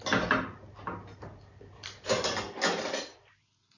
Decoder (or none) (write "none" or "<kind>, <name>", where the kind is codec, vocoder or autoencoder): none